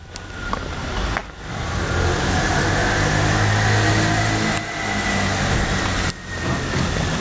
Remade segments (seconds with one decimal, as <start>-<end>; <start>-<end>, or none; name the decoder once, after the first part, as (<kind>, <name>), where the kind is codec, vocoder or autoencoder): none